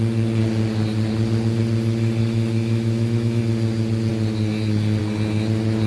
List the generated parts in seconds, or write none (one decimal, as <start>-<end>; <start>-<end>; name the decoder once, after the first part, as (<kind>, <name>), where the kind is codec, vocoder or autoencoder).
2.2-3.4 (autoencoder, DAC-VAE)